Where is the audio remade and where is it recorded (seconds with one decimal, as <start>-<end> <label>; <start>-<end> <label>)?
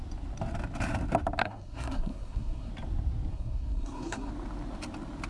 0.0-1.4 recorded; 1.4-2.7 remade; 2.7-3.3 recorded; 3.3-4.3 remade; 4.3-5.3 recorded